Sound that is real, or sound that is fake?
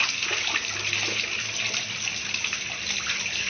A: real